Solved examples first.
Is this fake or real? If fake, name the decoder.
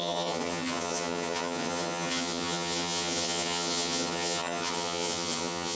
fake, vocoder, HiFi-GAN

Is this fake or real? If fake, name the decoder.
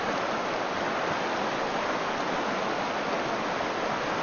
real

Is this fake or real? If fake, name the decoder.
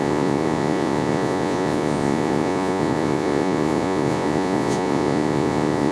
fake, vocoder, Vocos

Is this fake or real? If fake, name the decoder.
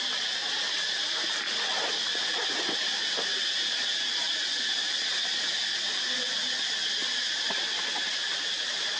real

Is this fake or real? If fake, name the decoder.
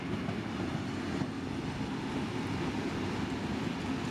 real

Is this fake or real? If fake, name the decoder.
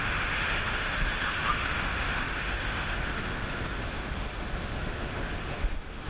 fake, autoencoder, DAC-VAE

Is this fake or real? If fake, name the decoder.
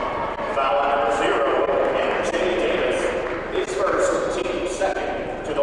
real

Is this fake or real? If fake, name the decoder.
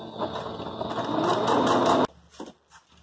real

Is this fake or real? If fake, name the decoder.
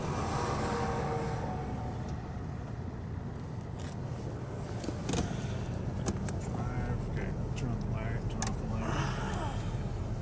real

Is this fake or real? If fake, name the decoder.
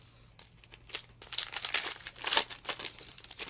real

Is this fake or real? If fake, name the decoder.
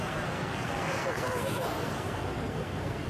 fake, codec, SNAC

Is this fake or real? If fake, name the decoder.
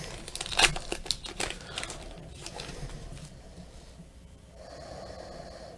real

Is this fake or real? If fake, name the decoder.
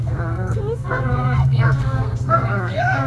fake, codec, SNAC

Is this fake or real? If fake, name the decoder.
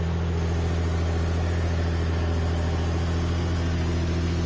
real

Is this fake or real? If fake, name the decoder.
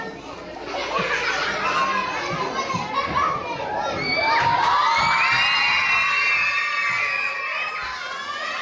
real